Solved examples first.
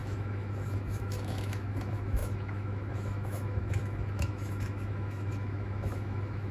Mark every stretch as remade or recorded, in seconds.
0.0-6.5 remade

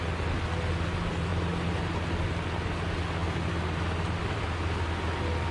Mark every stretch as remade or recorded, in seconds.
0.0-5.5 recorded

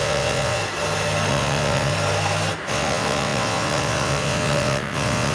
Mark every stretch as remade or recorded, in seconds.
0.0-0.6 remade; 0.6-1.3 recorded; 1.3-1.9 remade; 1.9-2.7 recorded; 2.7-5.3 remade

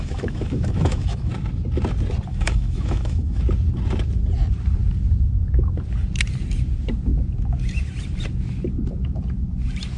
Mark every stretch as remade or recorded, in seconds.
0.0-1.3 remade; 1.3-2.3 recorded; 2.3-3.4 remade; 3.4-10.0 recorded

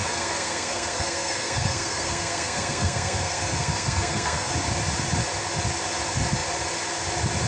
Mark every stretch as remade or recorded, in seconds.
0.0-4.5 remade; 4.5-7.5 recorded

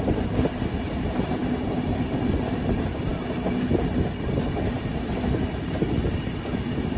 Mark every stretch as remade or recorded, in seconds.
0.0-7.0 recorded